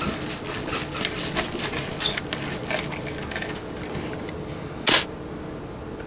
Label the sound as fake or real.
real